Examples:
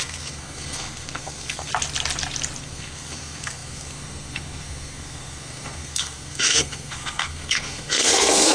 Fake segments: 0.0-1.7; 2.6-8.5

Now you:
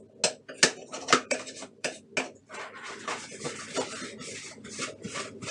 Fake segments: 0.8-2.0; 2.4-3.5

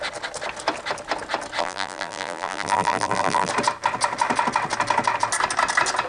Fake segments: 1.6-3.5

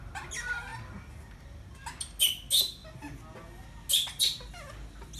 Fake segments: none

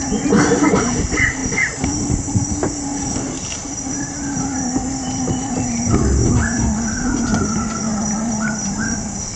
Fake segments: 2.9-5.5; 7.9-8.4

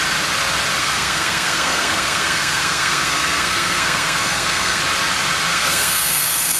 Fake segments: 0.8-4.8; 5.5-6.6

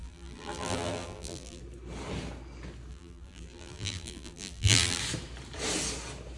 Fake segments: 0.0-1.6; 2.9-5.0

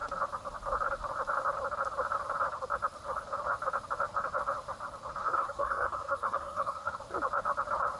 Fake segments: 5.2-7.0